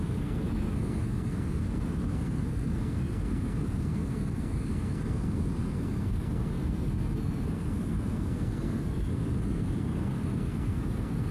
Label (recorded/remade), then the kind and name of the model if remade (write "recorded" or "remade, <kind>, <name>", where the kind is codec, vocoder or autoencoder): remade, codec, SNAC